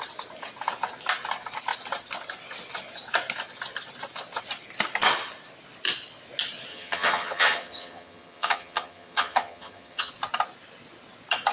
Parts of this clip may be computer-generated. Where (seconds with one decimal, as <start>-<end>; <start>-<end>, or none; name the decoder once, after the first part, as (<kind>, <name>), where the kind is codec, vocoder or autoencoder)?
6.7-10.1 (vocoder, HiFi-GAN)